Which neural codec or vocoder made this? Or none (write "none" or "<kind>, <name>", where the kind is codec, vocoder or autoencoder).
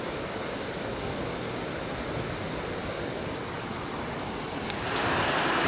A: none